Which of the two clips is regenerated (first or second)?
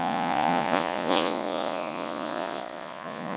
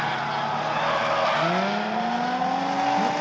first